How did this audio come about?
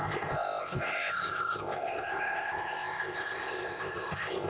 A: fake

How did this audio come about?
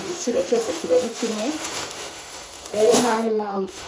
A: fake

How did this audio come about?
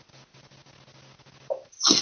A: real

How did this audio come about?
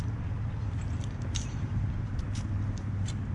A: real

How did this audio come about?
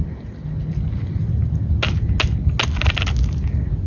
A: real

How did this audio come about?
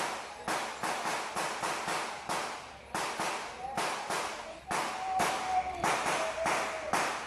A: real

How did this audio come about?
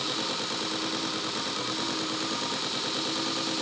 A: real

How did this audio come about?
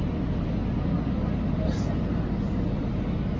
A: real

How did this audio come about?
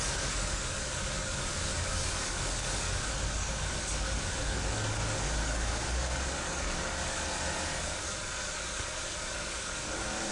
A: fake